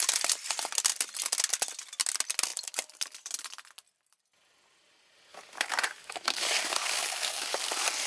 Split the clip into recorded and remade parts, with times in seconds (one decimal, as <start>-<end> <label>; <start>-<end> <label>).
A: 0.0-5.3 recorded; 5.3-7.6 remade; 7.6-8.1 recorded